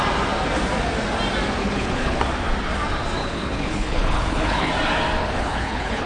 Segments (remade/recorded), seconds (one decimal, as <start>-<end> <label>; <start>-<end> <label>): 0.0-1.6 recorded; 1.6-2.2 remade; 2.2-3.2 recorded; 3.2-4.7 remade; 4.7-5.2 recorded; 5.2-6.1 remade